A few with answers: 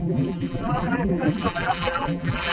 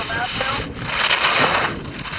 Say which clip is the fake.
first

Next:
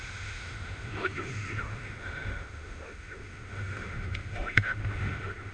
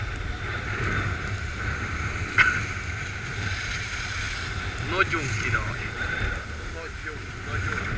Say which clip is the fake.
first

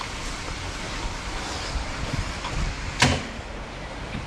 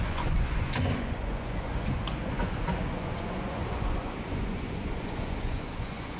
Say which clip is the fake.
second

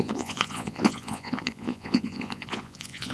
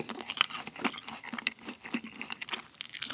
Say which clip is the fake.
first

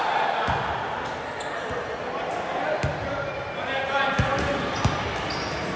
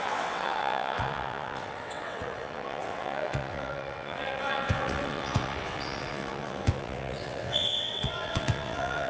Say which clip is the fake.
second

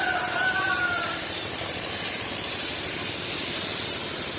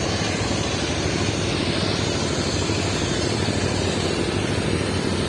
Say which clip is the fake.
first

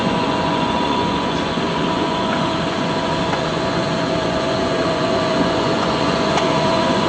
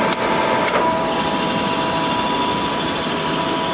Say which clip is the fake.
first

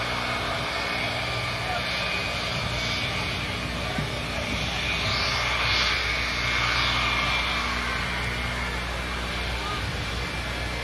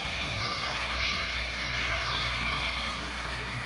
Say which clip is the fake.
second